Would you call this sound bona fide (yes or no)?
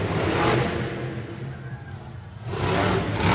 yes